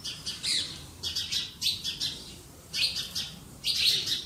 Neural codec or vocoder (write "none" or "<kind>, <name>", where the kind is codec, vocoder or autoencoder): vocoder, BigVGAN v2